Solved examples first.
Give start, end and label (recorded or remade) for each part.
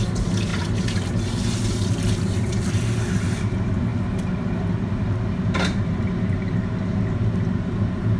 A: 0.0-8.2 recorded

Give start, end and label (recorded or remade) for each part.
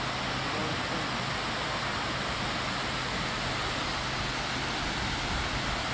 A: 0.0-5.9 recorded